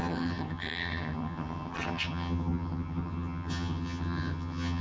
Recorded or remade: remade